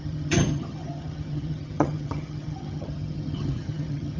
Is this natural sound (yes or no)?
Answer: no